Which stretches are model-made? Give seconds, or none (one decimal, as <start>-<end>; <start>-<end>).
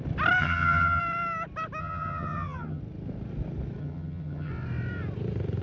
0.4-1.0; 1.8-2.8; 3.8-4.5